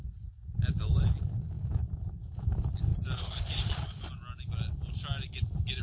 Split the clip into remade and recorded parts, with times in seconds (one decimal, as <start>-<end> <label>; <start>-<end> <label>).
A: 0.0-5.8 recorded